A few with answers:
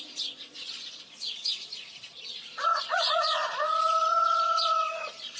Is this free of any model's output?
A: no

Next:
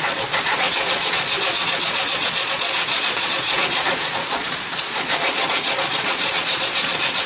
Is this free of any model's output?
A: no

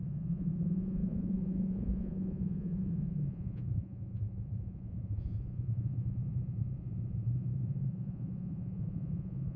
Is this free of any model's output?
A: no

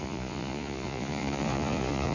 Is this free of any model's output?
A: no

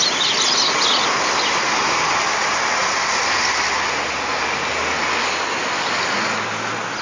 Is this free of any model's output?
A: yes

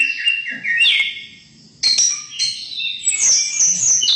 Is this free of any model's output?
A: yes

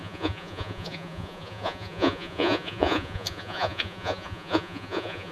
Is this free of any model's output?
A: no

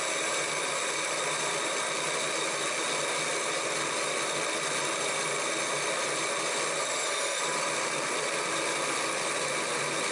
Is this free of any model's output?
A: yes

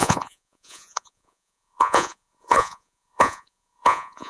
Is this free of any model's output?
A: no